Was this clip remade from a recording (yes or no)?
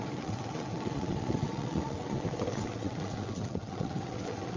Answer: yes